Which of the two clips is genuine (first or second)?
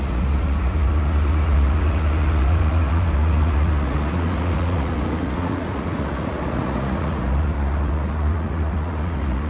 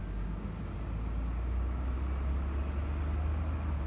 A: second